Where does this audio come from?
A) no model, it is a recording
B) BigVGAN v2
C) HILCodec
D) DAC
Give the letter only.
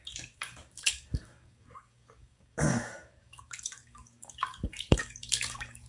D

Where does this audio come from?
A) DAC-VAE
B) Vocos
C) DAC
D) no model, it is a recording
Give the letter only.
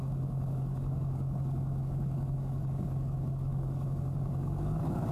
C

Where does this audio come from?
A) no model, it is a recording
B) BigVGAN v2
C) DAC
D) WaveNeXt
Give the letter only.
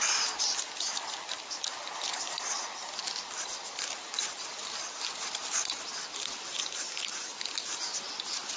A